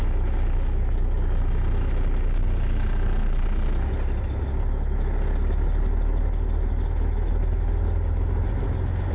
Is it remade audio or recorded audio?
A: recorded